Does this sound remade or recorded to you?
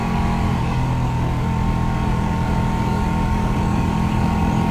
remade